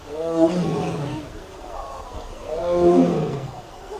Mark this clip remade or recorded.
remade